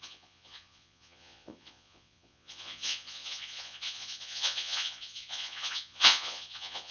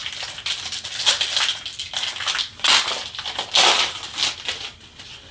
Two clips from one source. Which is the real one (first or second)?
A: second